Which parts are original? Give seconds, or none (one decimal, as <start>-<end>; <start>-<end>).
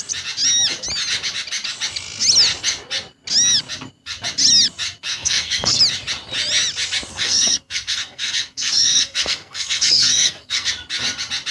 0.0-5.1; 5.8-7.1; 10.7-11.5